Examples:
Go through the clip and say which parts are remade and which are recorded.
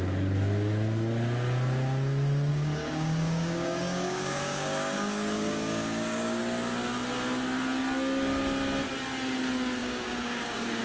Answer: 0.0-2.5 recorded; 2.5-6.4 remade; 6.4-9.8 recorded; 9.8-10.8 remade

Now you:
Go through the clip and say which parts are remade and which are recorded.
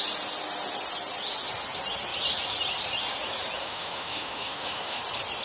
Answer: 0.0-3.6 recorded; 3.6-5.0 remade; 5.0-5.4 recorded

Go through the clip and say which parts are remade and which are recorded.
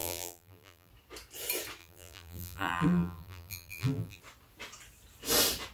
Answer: 0.0-0.9 remade; 0.9-1.8 recorded; 1.8-4.2 remade; 4.2-5.7 recorded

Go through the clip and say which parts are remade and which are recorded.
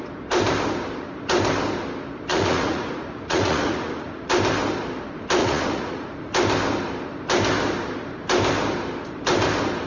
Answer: 0.0-2.3 recorded; 2.3-4.3 remade; 4.3-5.4 recorded; 5.4-6.3 remade; 6.3-9.9 recorded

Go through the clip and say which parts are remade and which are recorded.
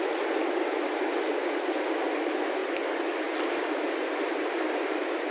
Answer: 0.0-5.3 recorded